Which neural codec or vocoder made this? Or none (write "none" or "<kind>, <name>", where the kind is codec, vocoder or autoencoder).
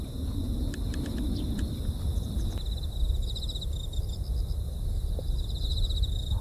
none